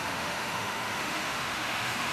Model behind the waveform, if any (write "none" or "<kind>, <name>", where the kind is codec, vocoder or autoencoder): autoencoder, DAC-VAE